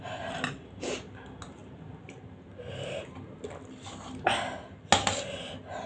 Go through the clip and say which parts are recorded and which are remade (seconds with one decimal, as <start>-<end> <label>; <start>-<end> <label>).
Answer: 0.0-5.9 recorded